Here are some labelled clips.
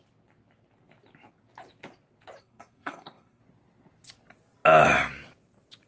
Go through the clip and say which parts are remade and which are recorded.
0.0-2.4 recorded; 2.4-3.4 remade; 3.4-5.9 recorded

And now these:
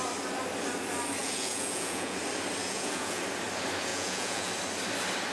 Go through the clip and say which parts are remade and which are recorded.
0.0-1.2 recorded; 1.2-2.2 remade; 2.2-2.6 recorded; 2.6-3.2 remade; 3.2-3.9 recorded; 3.9-4.5 remade; 4.5-5.3 recorded

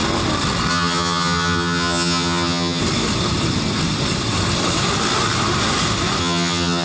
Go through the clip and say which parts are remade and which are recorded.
0.0-0.7 recorded; 0.7-2.8 remade; 2.8-6.2 recorded; 6.2-6.8 remade

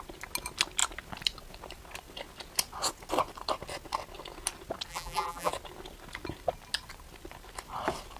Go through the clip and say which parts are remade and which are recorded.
0.0-4.9 recorded; 4.9-5.5 remade; 5.5-8.2 recorded

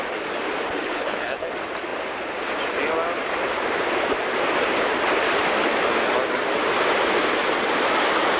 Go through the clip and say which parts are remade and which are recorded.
0.0-0.8 recorded; 0.8-1.5 remade; 1.5-8.4 recorded

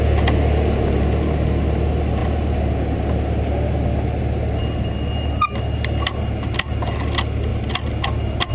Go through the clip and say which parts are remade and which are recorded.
0.0-8.5 recorded